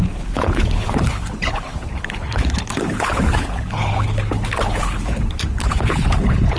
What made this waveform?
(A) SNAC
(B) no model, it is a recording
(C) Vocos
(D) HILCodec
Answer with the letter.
D